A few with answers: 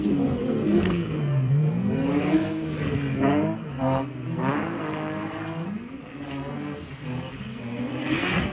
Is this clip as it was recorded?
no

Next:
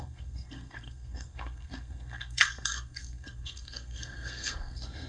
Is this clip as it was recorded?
no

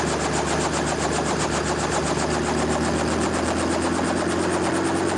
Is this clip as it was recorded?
yes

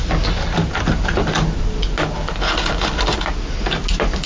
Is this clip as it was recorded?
yes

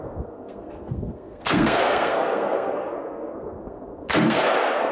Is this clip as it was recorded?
no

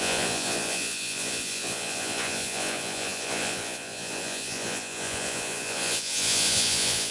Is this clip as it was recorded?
no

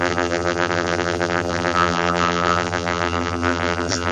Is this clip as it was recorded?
no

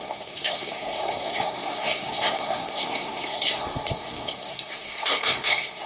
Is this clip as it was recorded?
no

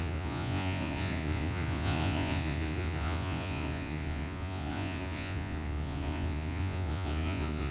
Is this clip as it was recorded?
no